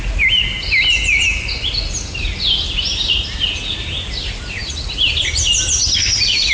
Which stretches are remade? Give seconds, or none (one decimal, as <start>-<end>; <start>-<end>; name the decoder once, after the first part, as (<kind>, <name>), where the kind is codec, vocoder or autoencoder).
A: none